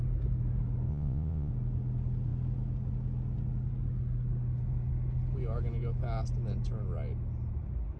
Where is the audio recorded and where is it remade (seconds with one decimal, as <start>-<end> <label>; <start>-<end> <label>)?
0.0-0.9 recorded; 0.9-1.5 remade; 1.5-8.0 recorded